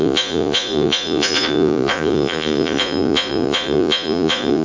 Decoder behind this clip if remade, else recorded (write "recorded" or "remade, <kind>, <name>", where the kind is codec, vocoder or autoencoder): remade, vocoder, Vocos